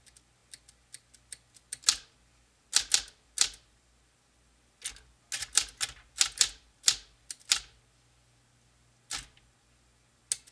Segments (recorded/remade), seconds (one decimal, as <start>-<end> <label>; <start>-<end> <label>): 0.0-10.5 recorded